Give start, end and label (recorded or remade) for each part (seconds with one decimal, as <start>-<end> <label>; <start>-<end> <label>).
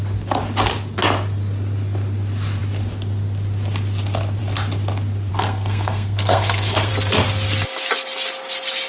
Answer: 0.0-5.3 recorded; 5.3-6.9 remade; 6.9-8.9 recorded